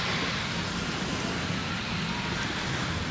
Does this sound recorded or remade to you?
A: recorded